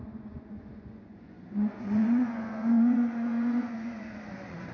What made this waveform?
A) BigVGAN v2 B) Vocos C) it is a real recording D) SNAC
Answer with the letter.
B